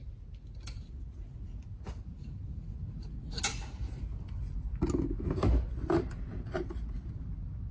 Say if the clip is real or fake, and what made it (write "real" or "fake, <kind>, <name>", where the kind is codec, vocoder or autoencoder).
real